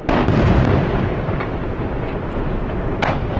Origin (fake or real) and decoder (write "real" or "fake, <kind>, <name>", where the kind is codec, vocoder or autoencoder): real